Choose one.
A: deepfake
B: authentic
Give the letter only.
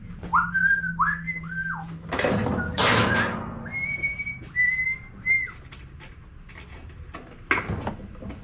B